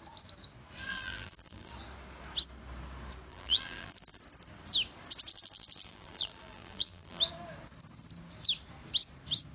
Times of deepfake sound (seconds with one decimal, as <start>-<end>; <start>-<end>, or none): 0.9-1.7; 3.3-4.2; 5.3-7.2